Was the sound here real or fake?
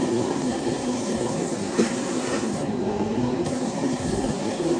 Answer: fake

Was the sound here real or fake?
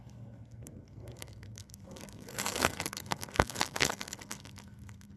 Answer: fake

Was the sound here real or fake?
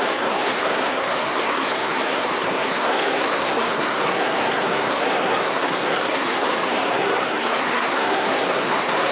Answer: fake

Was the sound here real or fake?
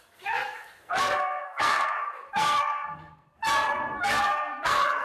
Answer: fake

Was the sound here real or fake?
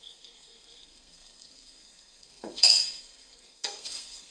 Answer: fake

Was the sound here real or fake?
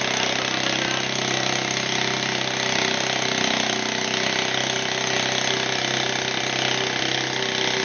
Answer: real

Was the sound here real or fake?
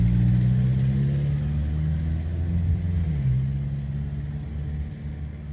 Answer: real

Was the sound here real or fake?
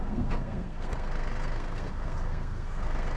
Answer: fake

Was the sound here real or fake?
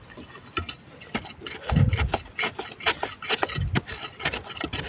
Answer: real